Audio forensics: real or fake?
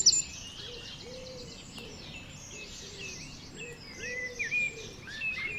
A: real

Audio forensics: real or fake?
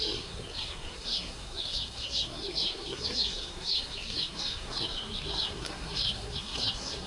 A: fake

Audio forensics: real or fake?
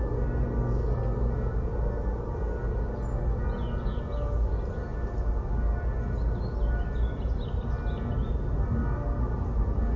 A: real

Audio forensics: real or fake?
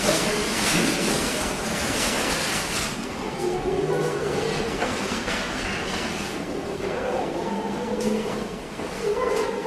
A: fake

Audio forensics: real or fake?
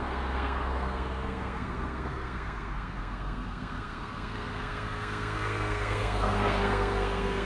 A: fake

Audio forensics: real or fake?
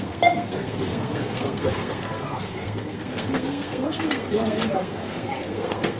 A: fake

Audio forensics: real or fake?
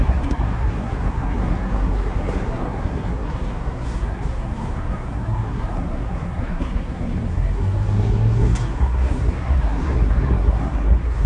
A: fake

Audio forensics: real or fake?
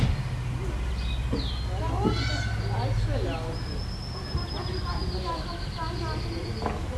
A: real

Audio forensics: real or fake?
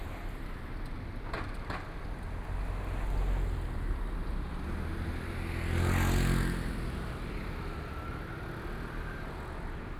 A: real